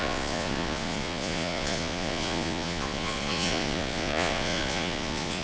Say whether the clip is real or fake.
fake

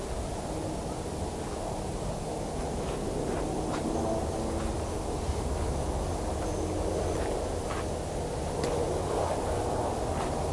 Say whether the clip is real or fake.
real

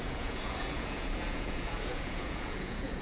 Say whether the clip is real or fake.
fake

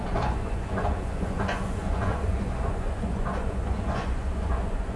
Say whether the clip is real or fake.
fake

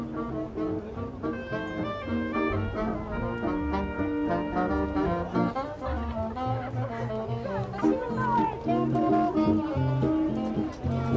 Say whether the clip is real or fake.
real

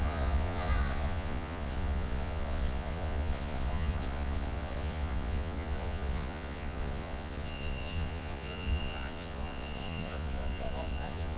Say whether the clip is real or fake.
fake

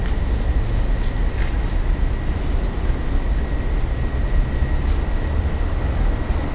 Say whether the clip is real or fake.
real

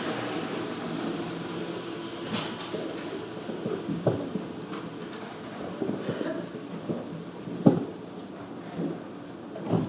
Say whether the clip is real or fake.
real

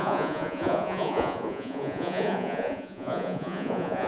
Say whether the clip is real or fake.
fake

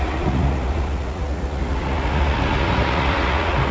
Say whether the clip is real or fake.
fake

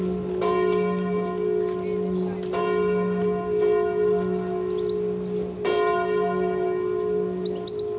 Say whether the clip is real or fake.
real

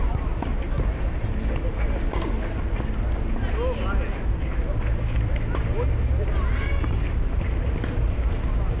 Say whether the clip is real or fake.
real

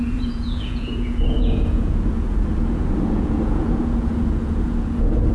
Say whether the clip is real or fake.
fake